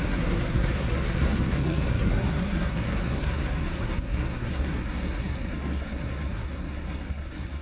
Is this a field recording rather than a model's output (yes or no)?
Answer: no